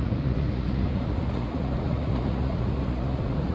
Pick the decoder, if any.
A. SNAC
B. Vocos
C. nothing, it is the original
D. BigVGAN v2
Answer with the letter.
B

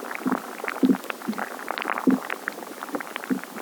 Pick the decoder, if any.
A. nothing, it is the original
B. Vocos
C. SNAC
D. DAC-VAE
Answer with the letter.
A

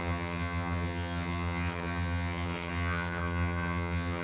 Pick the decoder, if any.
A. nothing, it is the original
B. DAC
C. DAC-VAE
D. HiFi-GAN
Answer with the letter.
D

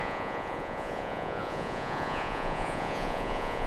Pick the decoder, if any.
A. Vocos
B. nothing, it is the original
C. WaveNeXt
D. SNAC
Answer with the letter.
A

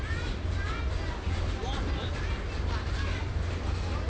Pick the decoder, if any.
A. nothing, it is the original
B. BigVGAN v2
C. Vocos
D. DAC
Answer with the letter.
A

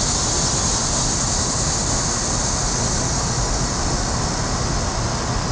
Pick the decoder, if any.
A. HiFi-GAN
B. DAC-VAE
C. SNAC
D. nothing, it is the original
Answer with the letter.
D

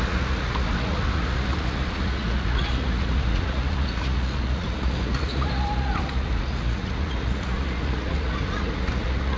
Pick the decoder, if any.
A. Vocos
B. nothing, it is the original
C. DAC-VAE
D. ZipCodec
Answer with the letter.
A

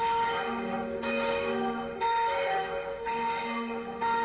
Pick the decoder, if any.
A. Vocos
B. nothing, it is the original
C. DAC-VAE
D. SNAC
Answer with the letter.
C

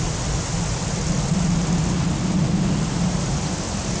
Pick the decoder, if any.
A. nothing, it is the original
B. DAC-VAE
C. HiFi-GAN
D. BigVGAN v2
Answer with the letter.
A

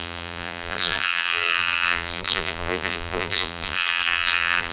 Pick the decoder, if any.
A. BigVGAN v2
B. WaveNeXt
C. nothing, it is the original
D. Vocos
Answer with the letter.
A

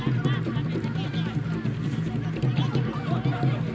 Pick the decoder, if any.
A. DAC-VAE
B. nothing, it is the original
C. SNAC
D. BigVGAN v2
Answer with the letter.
B